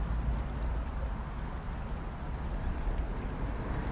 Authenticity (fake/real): real